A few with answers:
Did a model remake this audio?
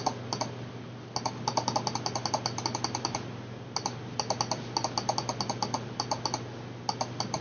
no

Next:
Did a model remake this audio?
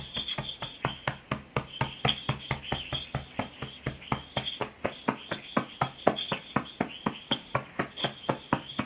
no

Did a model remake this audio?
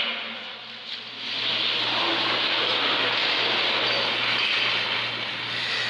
no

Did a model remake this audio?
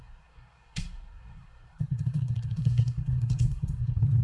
yes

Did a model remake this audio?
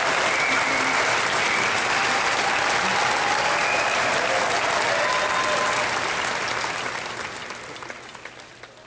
no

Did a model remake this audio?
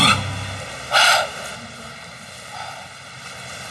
no